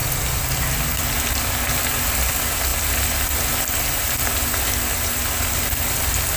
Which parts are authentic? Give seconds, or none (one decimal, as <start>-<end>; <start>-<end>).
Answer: 0.0-6.4